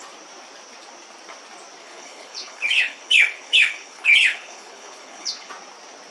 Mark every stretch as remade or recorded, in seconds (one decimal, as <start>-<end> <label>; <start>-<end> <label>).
0.0-1.8 recorded; 1.8-5.5 remade; 5.5-6.1 recorded